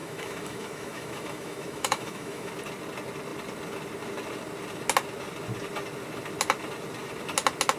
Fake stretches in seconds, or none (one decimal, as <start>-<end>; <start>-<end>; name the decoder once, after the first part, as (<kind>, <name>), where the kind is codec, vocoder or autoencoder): 0.0-2.5 (autoencoder, DAC-VAE)